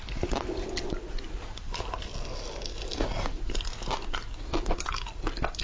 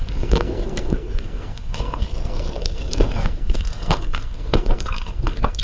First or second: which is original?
first